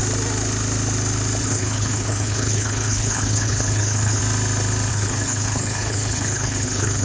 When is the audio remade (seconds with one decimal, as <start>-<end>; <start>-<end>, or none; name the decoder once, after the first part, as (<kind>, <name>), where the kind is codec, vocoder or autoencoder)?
1.4-4.2 (codec, HILCodec); 4.9-7.0